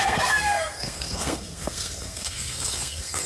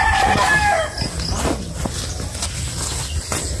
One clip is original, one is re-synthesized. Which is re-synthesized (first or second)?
first